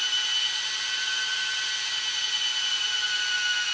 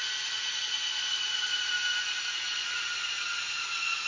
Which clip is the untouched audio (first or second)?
first